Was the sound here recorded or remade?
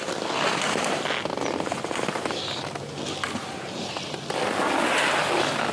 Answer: recorded